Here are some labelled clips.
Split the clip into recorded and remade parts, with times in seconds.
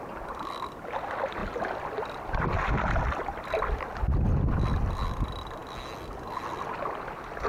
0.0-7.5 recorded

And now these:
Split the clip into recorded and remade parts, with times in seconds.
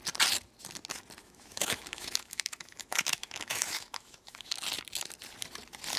0.0-1.2 recorded; 1.2-4.5 remade; 4.5-6.0 recorded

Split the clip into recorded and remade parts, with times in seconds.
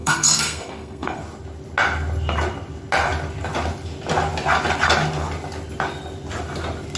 0.0-1.2 remade; 1.2-7.0 recorded